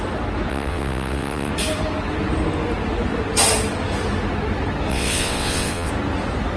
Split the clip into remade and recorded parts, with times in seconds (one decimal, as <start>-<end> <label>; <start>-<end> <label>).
0.0-0.5 recorded; 0.5-1.5 remade; 1.5-4.9 recorded; 4.9-5.9 remade; 5.9-6.6 recorded